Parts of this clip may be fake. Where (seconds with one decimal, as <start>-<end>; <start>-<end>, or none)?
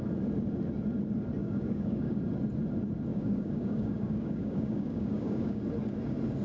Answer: 1.4-2.2; 3.1-5.6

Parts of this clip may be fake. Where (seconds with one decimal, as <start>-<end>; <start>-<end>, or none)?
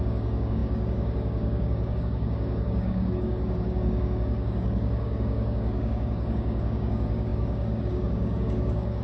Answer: 0.0-9.0